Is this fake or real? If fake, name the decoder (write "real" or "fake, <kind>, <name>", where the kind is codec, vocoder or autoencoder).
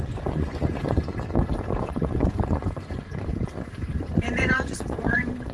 fake, vocoder, Vocos